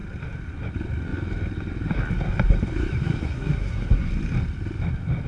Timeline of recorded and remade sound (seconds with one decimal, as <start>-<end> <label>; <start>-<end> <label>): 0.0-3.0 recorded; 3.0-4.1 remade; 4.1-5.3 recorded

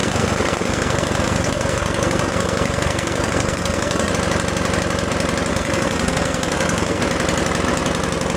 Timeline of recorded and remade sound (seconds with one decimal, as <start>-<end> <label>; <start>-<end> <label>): 0.0-4.1 remade; 4.1-5.5 recorded; 5.5-7.0 remade; 7.0-8.4 recorded

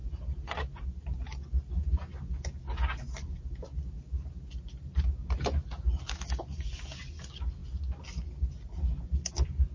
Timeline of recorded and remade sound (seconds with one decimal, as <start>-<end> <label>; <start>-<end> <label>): 0.0-9.7 recorded